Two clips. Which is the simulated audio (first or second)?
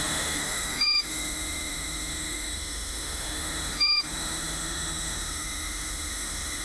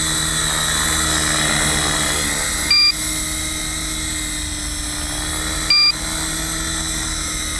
first